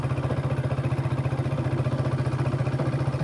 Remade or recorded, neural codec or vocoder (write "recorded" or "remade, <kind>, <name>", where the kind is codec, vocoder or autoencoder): remade, vocoder, BigVGAN v2